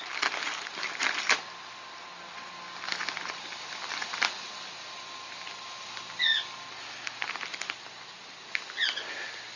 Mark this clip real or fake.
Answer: real